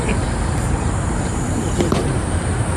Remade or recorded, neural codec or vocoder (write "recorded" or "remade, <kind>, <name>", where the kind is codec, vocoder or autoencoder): remade, vocoder, BigVGAN v2